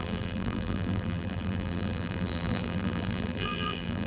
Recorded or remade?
remade